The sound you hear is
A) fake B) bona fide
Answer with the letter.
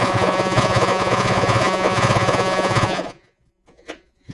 A